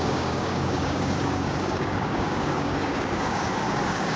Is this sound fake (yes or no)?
yes